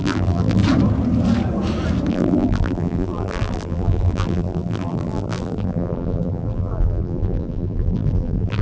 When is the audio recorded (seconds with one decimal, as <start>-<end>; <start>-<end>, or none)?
0.6-2.1